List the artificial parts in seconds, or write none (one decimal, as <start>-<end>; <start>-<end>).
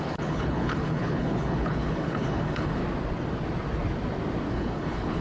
0.0-2.8; 4.5-5.2